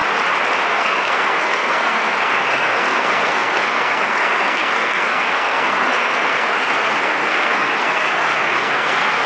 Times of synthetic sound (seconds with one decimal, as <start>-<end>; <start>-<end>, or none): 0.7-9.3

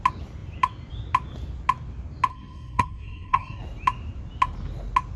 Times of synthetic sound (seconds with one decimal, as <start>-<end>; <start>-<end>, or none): 2.3-3.6

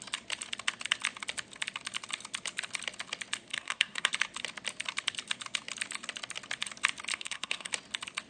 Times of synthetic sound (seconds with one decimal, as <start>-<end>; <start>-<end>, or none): 3.5-4.1; 7.1-7.7

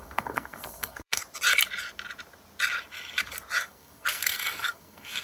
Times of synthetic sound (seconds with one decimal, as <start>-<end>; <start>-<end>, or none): 0.0-1.2; 3.6-5.2

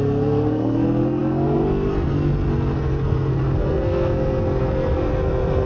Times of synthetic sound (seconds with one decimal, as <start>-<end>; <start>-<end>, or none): 0.0-5.7

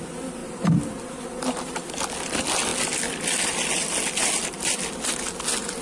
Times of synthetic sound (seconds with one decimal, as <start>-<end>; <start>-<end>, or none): none

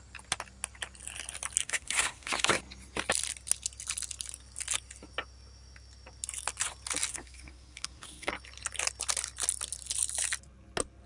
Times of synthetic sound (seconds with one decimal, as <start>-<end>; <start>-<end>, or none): 1.6-2.6; 7.1-8.3